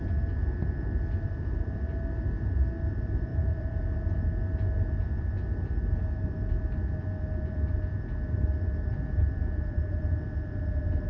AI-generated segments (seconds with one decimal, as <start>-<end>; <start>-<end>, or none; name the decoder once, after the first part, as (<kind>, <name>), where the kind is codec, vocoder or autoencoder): 3.3-3.8 (vocoder, BigVGAN v2); 6.2-10.1

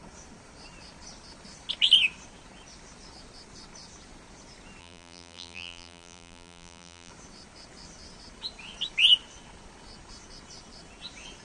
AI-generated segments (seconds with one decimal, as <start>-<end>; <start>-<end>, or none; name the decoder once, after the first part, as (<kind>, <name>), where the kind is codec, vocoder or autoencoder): 4.8-7.1 (vocoder, BigVGAN v2)

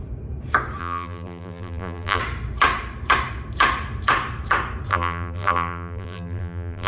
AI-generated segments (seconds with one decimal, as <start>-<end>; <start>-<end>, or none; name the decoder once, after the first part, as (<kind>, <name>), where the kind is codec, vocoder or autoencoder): 0.8-2.2 (vocoder, BigVGAN v2); 4.9-6.9

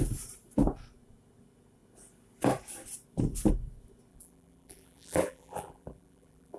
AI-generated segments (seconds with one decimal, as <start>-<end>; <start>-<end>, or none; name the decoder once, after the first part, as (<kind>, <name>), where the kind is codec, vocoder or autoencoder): 4.1-6.6 (vocoder, BigVGAN v2)

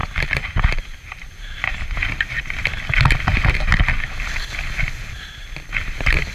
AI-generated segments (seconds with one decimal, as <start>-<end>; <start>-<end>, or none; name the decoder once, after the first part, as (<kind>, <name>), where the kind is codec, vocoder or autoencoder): 0.0-2.4 (vocoder, BigVGAN v2)

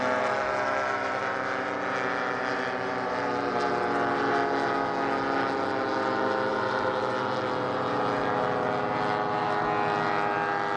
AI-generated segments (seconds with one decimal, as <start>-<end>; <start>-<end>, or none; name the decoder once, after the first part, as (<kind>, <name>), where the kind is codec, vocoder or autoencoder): 6.5-7.1 (vocoder, BigVGAN v2)

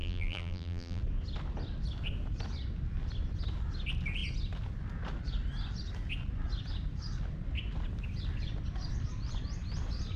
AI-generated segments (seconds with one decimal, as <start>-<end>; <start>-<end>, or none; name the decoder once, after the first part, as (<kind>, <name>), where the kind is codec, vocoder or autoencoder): 0.0-1.0 (vocoder, BigVGAN v2)